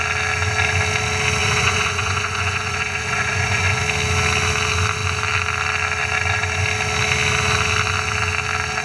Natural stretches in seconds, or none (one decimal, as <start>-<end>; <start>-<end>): 0.0-1.4; 3.8-8.8